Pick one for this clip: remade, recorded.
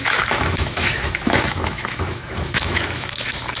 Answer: remade